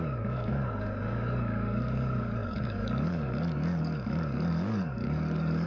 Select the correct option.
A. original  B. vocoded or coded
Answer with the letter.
B